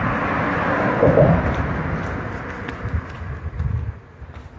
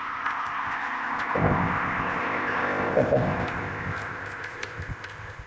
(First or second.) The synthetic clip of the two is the second